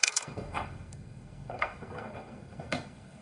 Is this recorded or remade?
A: remade